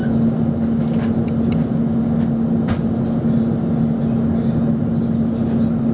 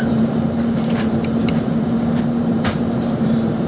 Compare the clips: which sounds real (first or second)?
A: first